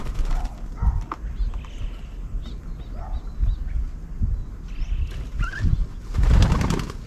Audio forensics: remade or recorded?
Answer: recorded